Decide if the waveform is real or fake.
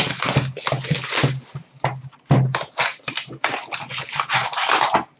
real